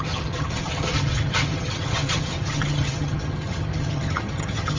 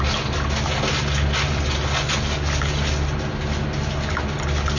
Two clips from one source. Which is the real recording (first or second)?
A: second